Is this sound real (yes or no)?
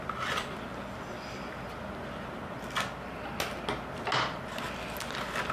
yes